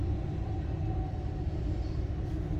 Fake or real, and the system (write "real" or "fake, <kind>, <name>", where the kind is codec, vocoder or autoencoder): real